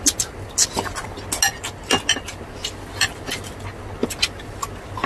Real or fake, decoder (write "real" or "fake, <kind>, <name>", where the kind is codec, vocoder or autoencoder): real